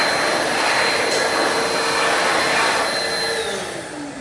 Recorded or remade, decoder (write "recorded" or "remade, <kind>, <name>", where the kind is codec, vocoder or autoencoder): recorded